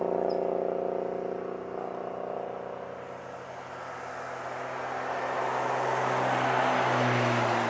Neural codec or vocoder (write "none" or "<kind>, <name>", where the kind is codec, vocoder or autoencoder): none